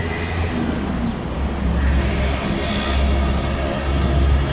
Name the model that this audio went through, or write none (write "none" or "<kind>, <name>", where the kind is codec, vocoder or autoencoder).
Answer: none